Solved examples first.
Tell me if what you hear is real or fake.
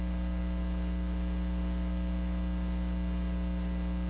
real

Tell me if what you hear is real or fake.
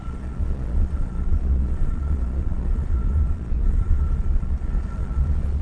fake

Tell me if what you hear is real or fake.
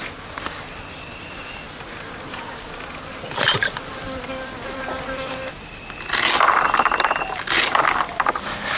real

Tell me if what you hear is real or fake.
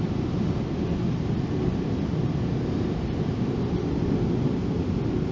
real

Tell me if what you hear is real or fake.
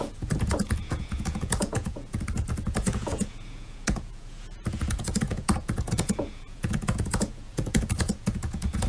fake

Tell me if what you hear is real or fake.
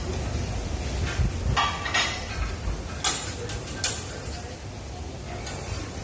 real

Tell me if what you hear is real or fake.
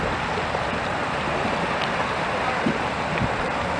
real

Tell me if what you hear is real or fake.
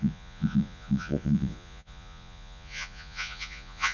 fake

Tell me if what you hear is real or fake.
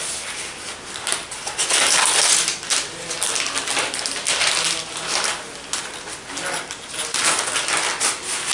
real